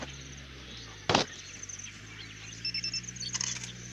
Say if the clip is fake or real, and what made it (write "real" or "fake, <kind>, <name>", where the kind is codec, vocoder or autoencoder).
real